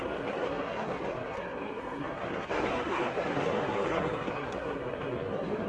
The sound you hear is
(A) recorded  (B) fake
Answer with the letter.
B